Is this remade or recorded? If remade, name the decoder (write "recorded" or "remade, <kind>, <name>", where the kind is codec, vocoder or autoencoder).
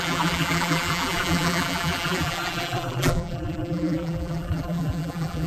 remade, vocoder, BigVGAN v2